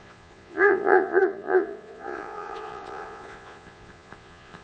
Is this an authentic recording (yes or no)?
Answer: no